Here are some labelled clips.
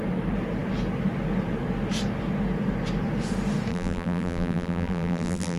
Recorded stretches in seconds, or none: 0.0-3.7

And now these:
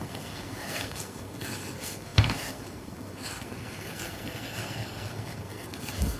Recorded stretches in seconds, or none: none

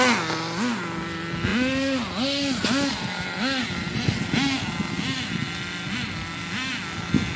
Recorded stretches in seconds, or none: 0.0-7.4

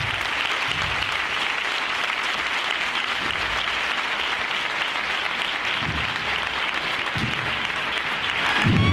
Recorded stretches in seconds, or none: 0.0-8.9

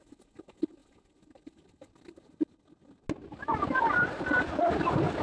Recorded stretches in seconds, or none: 0.0-5.2